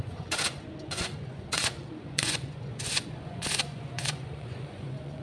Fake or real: fake